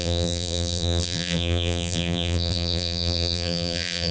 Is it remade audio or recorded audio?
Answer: remade